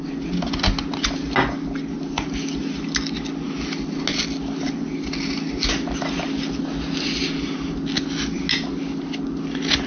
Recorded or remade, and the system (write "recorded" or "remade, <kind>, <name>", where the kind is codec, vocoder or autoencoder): recorded